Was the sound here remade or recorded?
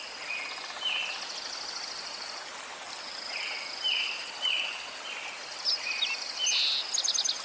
recorded